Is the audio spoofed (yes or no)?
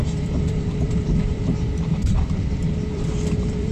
yes